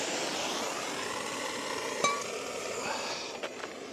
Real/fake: real